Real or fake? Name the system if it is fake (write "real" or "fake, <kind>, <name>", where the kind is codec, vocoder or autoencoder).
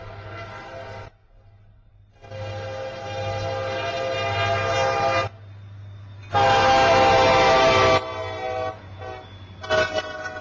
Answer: real